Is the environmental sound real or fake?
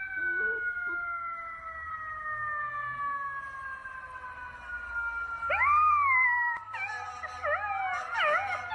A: real